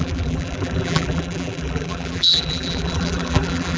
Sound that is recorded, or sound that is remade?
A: remade